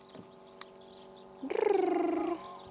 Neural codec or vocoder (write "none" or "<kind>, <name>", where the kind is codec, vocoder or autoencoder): none